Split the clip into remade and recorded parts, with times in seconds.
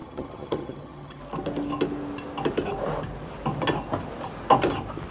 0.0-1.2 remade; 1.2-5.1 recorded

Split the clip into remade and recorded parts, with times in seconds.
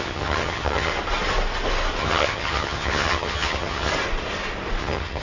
0.0-0.9 remade; 0.9-2.0 recorded; 2.0-3.9 remade; 3.9-4.8 recorded; 4.8-5.2 remade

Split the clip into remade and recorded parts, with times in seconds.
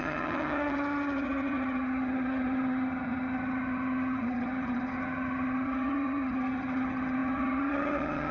0.0-8.3 remade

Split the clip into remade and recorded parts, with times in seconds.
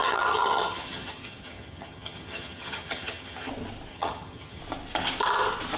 0.0-3.5 remade; 3.5-3.9 recorded; 3.9-4.6 remade; 4.6-5.8 recorded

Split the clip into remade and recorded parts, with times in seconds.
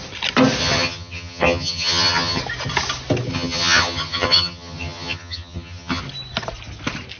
0.0-0.6 recorded; 0.6-2.4 remade; 2.4-3.3 recorded; 3.3-6.0 remade; 6.0-7.2 recorded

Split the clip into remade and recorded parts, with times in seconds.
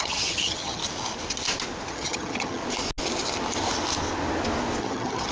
0.0-0.8 remade; 0.8-1.9 recorded; 1.9-2.6 remade; 2.6-4.8 recorded; 4.8-5.3 remade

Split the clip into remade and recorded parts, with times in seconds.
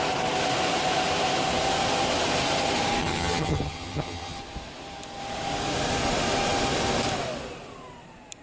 0.0-3.0 recorded; 3.0-4.4 remade; 4.4-8.4 recorded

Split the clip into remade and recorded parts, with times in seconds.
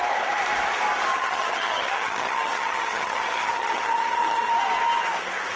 0.0-1.1 recorded; 1.1-4.5 remade; 4.5-5.6 recorded